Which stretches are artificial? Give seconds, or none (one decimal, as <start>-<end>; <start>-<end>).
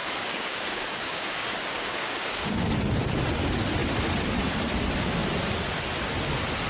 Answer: 0.0-2.7